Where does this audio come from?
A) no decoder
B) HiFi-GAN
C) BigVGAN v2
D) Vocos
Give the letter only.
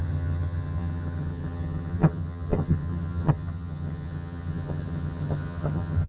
B